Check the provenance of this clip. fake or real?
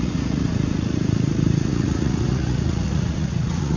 fake